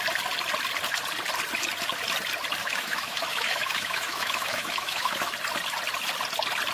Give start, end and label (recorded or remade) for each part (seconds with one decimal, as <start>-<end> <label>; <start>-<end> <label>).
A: 0.0-2.6 recorded; 2.6-5.3 remade; 5.3-6.7 recorded

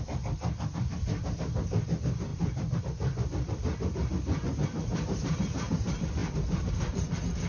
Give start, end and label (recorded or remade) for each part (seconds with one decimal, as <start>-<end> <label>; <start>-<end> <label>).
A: 0.0-2.3 recorded; 2.3-2.8 remade; 2.8-4.9 recorded; 4.9-5.7 remade; 5.7-7.5 recorded